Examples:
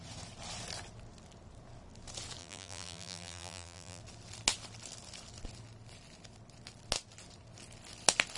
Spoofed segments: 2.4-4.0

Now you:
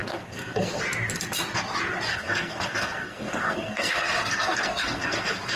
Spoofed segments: 0.0-0.8; 2.1-5.6

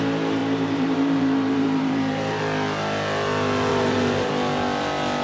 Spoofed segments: 0.4-2.4; 3.7-4.3

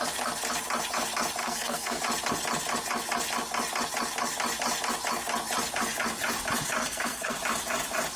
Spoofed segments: 1.4-2.0; 6.8-7.4

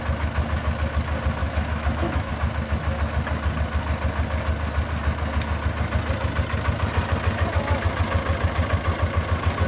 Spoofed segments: 1.4-2.3

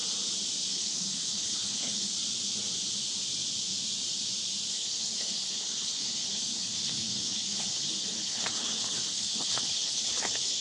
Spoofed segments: 0.7-2.1; 4.7-10.6